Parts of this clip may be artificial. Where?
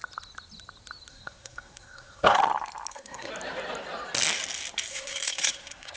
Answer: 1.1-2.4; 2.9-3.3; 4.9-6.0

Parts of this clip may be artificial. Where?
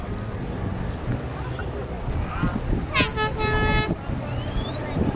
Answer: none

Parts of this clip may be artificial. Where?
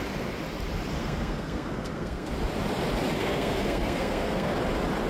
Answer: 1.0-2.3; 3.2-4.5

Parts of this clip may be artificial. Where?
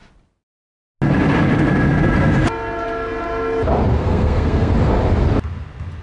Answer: 4.0-4.7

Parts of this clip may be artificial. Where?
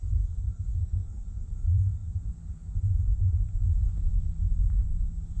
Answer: 0.0-1.2